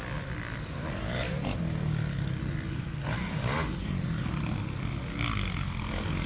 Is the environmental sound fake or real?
real